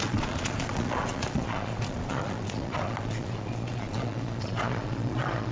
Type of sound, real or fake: fake